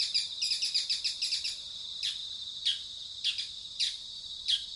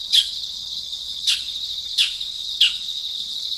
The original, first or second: first